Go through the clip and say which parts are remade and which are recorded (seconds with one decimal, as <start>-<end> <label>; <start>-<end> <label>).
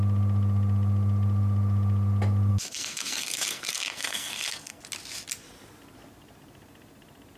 0.0-2.5 recorded; 2.5-4.8 remade; 4.8-7.4 recorded